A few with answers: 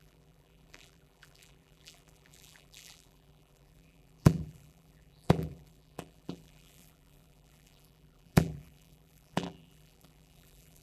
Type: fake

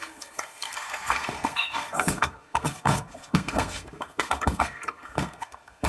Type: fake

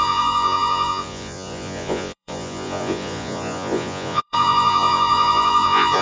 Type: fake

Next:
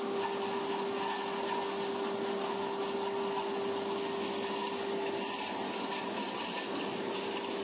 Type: real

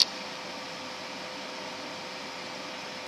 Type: real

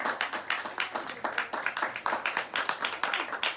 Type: real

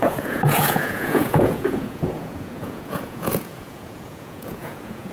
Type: fake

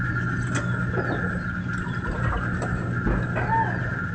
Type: real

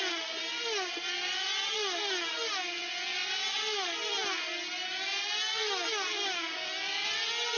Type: real